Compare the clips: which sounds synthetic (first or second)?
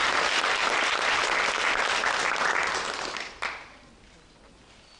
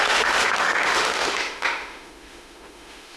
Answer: second